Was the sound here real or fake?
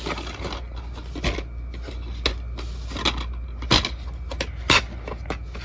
real